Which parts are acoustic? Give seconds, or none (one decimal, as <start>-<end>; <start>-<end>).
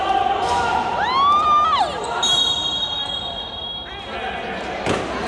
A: 0.0-5.3